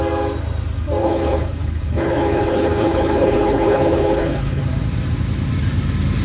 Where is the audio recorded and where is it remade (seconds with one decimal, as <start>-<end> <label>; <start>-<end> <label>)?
0.0-1.0 recorded; 1.0-4.6 remade; 4.6-6.2 recorded